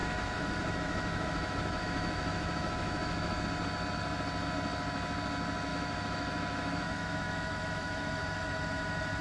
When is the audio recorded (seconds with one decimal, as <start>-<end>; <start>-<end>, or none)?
3.4-5.7